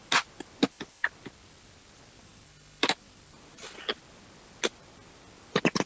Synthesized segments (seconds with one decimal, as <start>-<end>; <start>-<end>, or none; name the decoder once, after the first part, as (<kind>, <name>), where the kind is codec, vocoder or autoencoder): none